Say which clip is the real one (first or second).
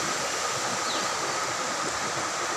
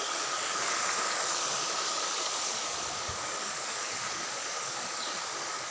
first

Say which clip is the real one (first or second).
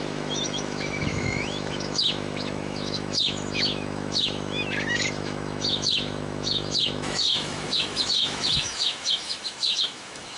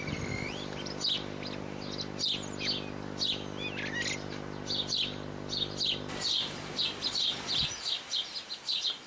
second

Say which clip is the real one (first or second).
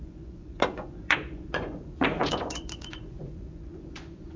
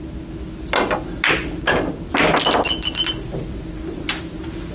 second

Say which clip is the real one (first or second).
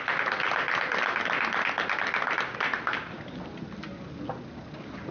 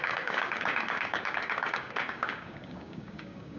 first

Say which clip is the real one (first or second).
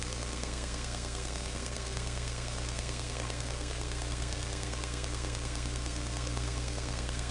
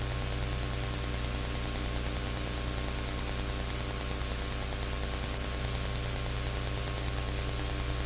second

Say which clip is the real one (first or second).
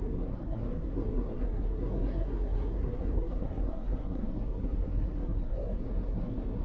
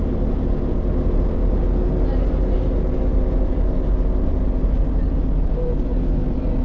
second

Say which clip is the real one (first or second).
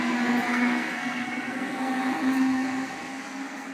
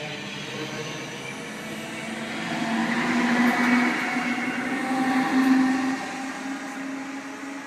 second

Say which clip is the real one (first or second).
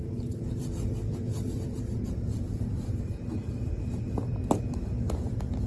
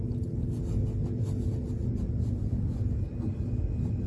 second